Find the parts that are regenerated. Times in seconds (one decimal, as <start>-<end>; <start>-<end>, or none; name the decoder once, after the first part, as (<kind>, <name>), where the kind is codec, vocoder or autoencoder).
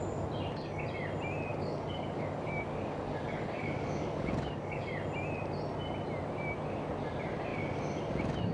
1.5-4.9 (codec, DAC)